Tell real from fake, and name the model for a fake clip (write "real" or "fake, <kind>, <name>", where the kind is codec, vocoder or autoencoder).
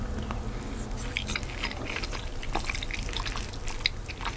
real